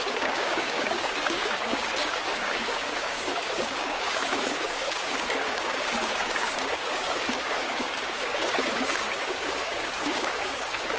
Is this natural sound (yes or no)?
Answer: no